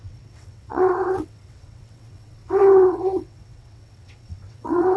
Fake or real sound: fake